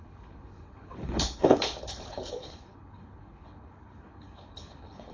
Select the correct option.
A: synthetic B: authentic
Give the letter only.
A